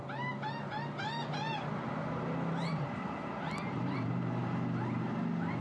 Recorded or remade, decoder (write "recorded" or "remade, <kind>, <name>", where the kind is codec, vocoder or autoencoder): recorded